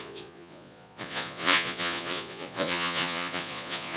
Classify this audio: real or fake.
fake